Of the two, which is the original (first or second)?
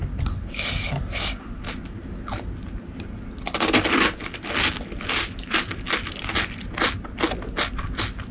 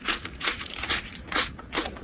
first